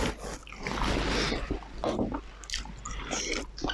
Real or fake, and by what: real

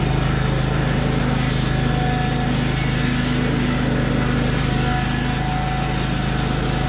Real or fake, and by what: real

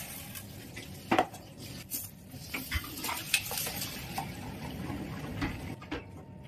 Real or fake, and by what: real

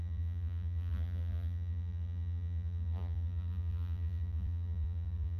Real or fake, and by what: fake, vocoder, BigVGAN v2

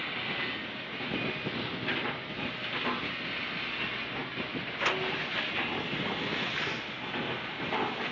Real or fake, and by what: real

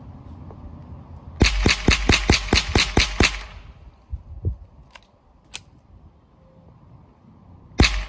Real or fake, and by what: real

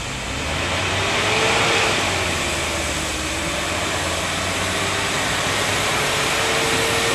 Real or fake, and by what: real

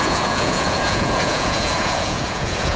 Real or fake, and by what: fake, vocoder, Vocos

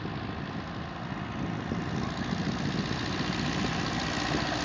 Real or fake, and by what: real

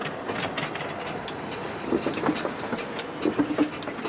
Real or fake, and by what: real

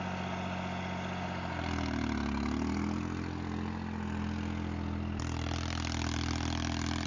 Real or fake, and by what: real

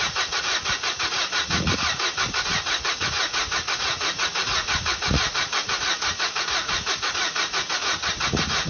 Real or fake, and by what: fake, vocoder, Vocos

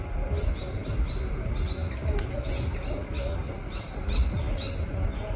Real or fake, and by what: real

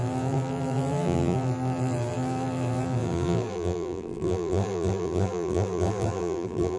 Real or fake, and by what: fake, vocoder, BigVGAN v2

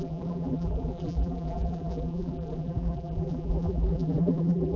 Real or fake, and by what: fake, vocoder, BigVGAN v2